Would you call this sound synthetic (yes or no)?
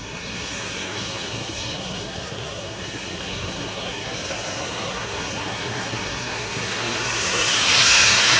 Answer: yes